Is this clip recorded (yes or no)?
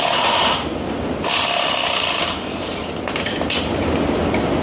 yes